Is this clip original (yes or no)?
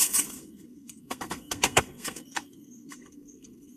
no